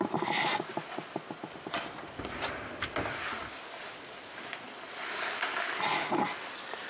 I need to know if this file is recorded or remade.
recorded